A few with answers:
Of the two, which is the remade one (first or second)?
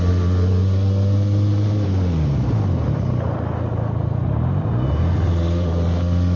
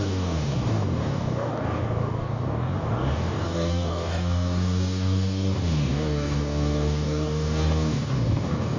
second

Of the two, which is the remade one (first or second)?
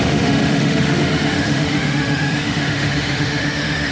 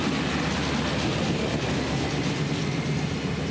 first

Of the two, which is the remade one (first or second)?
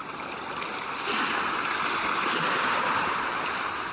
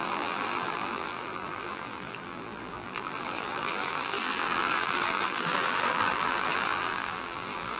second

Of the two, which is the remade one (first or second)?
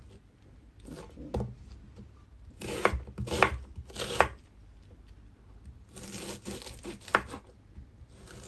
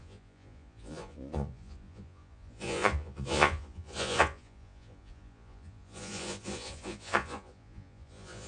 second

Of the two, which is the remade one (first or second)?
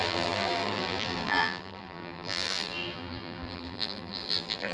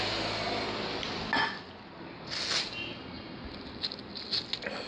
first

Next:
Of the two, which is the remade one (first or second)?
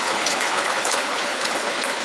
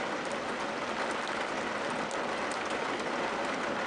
first